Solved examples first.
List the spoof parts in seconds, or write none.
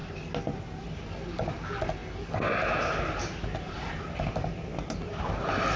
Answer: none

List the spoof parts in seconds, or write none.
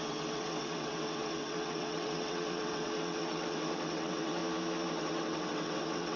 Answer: 0.0-4.4 (vocoder, WaveNeXt); 4.9-6.2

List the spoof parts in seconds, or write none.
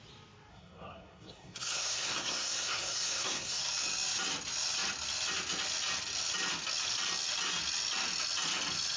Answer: 0.5-3.6 (codec, SNAC)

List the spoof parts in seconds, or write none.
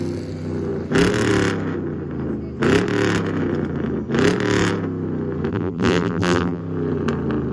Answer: 5.5-6.6 (vocoder, BigVGAN v2)